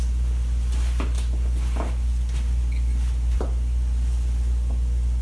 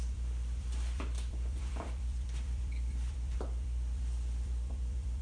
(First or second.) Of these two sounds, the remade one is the second